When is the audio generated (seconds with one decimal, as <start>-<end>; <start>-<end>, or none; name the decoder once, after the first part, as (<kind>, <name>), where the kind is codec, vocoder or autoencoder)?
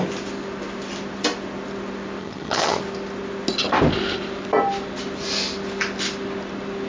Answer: 2.2-2.8 (vocoder, HiFi-GAN)